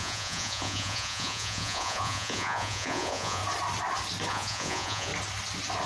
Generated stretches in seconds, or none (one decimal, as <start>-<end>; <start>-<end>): 0.0-3.4; 4.3-5.1